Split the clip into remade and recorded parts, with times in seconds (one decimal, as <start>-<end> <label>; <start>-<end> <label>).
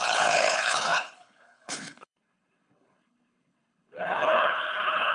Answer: 0.0-5.1 remade